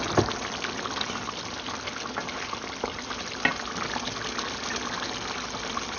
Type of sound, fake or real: real